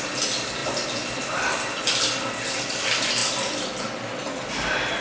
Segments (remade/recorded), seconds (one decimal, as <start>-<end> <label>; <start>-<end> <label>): 0.0-5.0 recorded